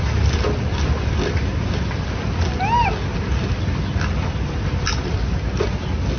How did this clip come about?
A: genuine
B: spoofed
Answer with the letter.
A